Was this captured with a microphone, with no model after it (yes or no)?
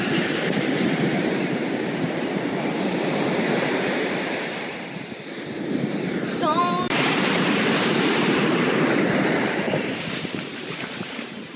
no